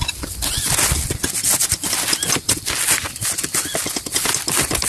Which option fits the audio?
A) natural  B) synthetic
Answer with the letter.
A